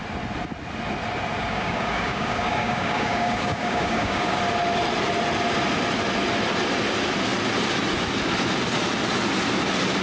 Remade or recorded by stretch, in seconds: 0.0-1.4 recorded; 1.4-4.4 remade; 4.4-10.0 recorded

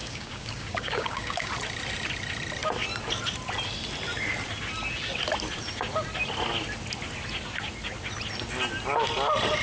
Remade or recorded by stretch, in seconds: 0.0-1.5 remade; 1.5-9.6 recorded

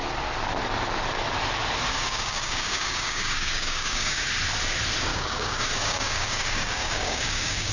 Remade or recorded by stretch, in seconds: 0.0-1.9 recorded; 1.9-4.3 remade; 4.3-5.1 recorded; 5.1-7.7 remade

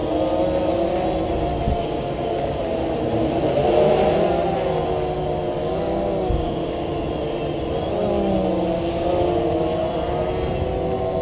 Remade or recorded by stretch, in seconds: 0.0-1.8 recorded; 1.8-2.6 remade; 2.6-5.6 recorded; 5.6-6.9 remade; 6.9-11.2 recorded

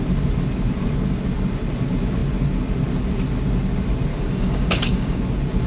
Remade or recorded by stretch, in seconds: 0.0-4.1 recorded; 4.1-5.2 remade; 5.2-5.7 recorded